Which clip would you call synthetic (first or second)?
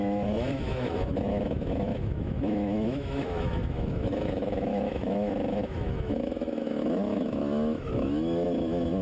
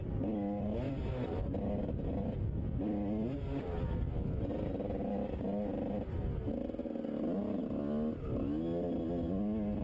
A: first